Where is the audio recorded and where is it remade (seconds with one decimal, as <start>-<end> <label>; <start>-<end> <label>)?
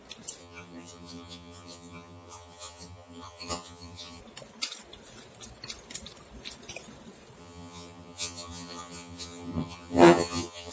0.0-0.4 recorded; 0.4-4.2 remade; 4.2-7.4 recorded; 7.4-10.7 remade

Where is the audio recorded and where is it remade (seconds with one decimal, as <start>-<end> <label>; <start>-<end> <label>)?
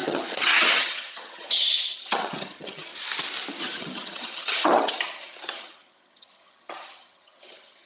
0.0-2.9 remade; 2.9-3.6 recorded; 3.6-7.9 remade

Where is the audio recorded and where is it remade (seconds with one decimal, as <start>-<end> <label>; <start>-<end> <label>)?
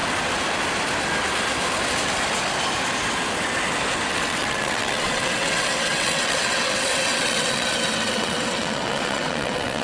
0.0-4.1 recorded; 4.1-9.8 remade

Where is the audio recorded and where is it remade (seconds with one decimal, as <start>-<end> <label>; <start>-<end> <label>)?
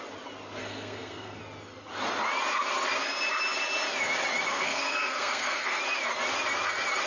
0.0-0.6 recorded; 0.6-1.4 remade; 1.4-4.5 recorded; 4.5-5.8 remade; 5.8-7.1 recorded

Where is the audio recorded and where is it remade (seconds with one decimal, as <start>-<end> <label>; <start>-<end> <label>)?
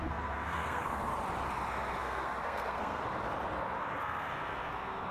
0.0-1.1 remade; 1.1-2.0 recorded; 2.0-3.0 remade; 3.0-4.0 recorded; 4.0-5.1 remade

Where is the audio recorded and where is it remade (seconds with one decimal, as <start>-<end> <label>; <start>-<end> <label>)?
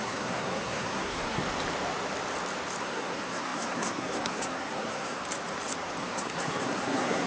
0.0-1.4 remade; 1.4-2.8 recorded; 2.8-5.2 remade; 5.2-6.0 recorded; 6.0-7.3 remade